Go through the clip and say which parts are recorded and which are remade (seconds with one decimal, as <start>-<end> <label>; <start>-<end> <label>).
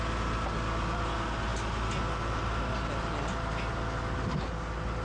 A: 0.0-5.0 recorded